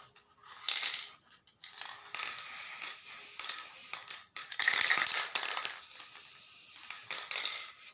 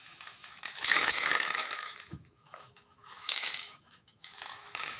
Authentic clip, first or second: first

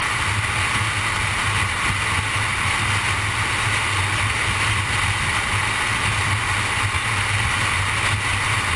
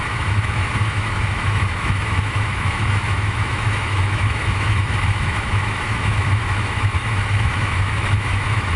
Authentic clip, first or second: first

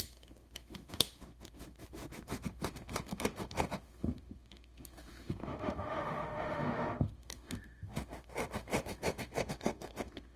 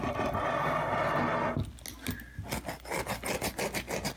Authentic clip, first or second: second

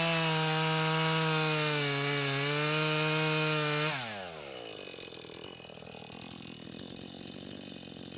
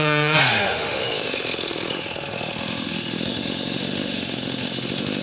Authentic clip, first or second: first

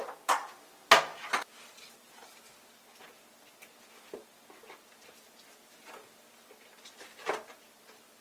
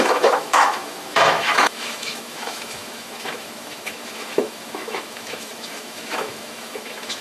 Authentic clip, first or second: first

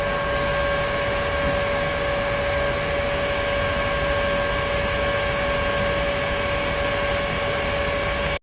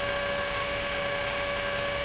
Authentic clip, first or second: first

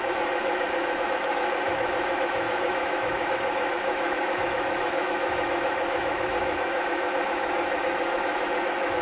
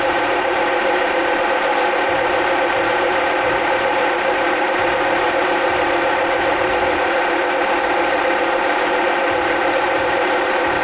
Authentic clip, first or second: second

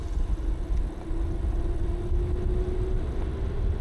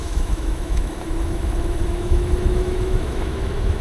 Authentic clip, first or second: first